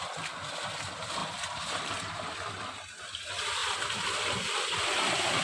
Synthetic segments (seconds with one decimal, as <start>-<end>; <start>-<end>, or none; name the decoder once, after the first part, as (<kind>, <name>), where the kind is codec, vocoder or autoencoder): none